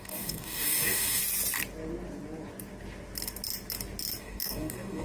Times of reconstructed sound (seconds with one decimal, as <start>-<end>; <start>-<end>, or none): 0.0-1.2; 4.2-5.0